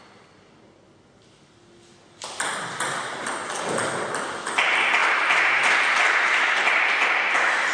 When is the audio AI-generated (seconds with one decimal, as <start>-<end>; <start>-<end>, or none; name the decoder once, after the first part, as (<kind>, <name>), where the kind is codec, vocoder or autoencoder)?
none